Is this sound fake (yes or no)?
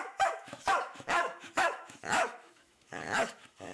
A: yes